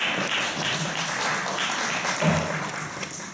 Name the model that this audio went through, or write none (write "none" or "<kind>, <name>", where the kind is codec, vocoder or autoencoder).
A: none